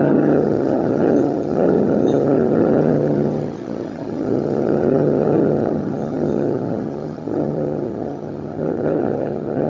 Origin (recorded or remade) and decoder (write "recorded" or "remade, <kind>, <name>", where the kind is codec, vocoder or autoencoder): remade, vocoder, HiFi-GAN